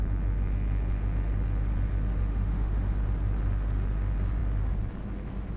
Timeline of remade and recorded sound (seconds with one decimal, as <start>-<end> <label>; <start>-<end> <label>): 0.0-2.3 recorded; 2.3-2.9 remade; 2.9-5.6 recorded